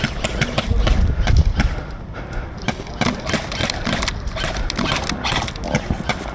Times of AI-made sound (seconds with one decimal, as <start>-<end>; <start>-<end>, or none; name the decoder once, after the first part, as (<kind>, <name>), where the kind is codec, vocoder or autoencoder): none